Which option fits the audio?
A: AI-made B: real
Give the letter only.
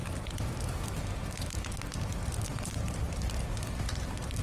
B